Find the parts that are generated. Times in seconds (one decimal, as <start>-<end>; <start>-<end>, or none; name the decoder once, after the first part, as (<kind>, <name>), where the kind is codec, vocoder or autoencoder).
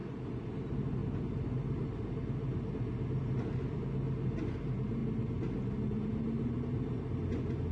0.0-0.6 (vocoder, BigVGAN v2)